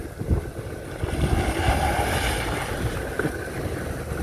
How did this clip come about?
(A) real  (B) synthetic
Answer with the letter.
A